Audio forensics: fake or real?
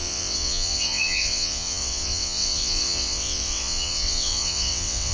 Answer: fake